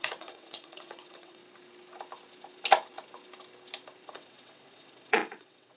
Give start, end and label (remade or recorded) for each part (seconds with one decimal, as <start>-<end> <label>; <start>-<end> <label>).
0.0-1.4 remade; 1.4-4.1 recorded; 4.1-5.8 remade